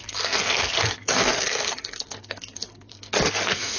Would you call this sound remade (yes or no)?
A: yes